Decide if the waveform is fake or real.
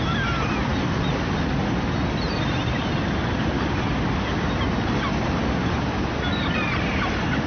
real